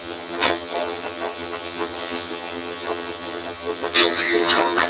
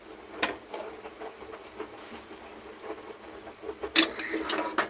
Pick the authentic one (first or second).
second